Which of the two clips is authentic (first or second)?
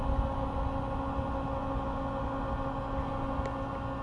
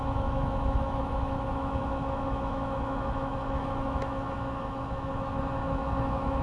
first